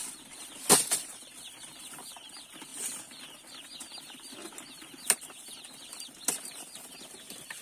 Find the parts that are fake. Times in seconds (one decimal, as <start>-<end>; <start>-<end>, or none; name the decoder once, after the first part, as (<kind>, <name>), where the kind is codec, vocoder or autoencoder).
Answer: 0.0-1.5 (vocoder, BigVGAN v2)